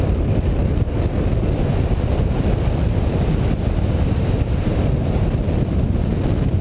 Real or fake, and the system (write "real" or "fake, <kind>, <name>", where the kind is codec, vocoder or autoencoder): real